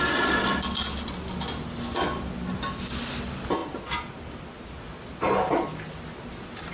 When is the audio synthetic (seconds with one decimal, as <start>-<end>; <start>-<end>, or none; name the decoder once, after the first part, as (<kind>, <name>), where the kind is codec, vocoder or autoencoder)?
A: none